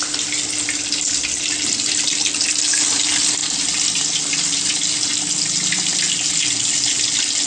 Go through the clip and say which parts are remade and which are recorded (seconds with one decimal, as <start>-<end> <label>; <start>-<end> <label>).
0.0-7.5 recorded